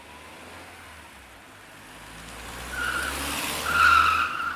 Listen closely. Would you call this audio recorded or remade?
recorded